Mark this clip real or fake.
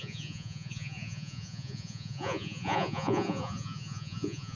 fake